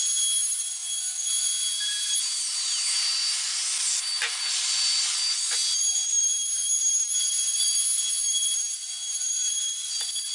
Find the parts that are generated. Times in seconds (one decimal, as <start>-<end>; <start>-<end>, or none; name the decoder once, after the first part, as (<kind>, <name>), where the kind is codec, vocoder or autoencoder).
0.8-4.6 (vocoder, BigVGAN v2); 8.2-9.3